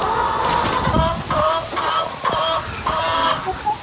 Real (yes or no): yes